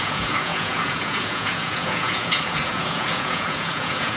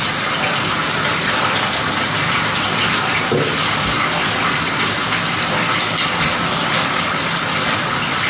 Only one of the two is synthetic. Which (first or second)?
first